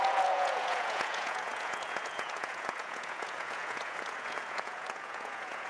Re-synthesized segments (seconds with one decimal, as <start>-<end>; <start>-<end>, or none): 0.0-5.7